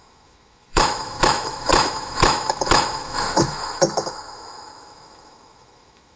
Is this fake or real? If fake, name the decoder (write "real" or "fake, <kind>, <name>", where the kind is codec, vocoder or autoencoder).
fake, autoencoder, DAC-VAE